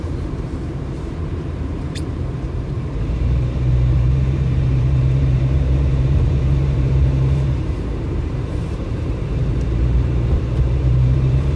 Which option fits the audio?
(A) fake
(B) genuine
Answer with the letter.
A